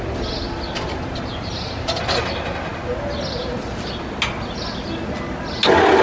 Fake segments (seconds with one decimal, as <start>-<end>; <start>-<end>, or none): 1.3-2.2